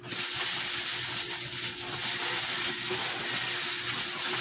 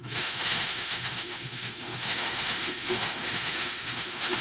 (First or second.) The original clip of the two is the first